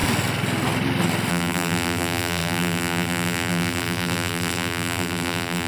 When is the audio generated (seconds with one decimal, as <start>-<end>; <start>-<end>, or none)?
1.3-5.7